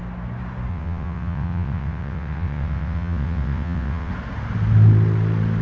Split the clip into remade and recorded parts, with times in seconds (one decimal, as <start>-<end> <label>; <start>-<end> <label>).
0.0-0.7 recorded; 0.7-4.1 remade; 4.1-5.6 recorded